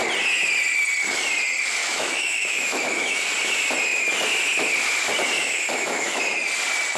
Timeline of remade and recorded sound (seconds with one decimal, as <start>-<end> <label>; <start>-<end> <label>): 0.0-1.8 recorded; 1.8-3.3 remade; 3.3-5.4 recorded; 5.4-6.2 remade; 6.2-7.0 recorded